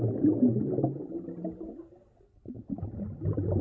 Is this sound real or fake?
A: real